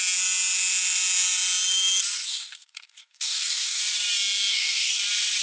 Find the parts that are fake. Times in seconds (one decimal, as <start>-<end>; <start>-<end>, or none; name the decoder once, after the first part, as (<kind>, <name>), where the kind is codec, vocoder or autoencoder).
2.3-3.8 (codec, DAC); 4.5-5.0

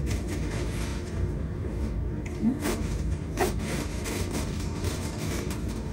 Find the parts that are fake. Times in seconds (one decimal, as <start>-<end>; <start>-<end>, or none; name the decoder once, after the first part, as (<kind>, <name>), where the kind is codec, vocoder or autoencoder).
0.0-5.9 (codec, DAC)

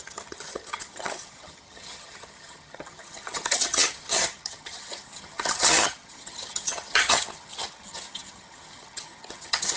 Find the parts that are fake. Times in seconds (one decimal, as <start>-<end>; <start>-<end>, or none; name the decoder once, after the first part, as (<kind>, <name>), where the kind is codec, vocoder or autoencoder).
0.0-9.8 (vocoder, HiFi-GAN)

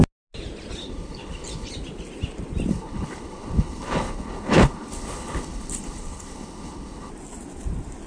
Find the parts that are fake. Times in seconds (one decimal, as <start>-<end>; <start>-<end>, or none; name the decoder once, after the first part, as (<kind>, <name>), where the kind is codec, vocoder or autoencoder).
0.8-1.7 (codec, HILCodec); 2.7-7.1

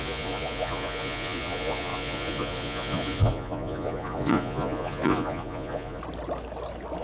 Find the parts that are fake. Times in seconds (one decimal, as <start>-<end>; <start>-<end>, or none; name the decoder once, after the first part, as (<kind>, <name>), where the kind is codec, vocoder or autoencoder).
0.0-6.0 (vocoder, Vocos)

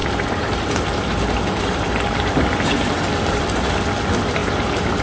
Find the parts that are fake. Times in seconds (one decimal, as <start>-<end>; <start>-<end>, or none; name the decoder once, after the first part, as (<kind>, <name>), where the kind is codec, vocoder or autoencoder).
0.0-3.0 (vocoder, BigVGAN v2); 4.4-5.0

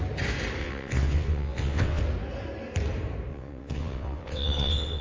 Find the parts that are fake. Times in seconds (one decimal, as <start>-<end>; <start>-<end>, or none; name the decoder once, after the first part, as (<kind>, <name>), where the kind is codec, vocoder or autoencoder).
0.6-2.0 (vocoder, WaveNeXt); 3.3-5.0